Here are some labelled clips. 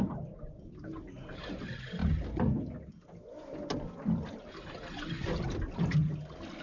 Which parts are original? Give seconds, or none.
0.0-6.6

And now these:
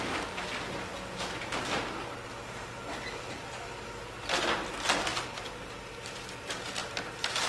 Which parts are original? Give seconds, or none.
0.9-3.1; 6.8-7.5